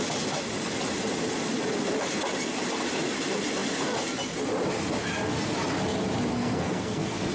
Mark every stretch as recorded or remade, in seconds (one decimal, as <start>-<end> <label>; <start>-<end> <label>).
0.0-6.3 recorded; 6.3-7.3 remade